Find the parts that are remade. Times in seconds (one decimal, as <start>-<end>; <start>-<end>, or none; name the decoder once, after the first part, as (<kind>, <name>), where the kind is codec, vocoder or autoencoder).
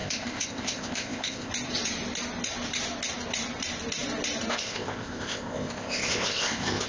0.0-1.5 (codec, ZipCodec); 4.5-6.9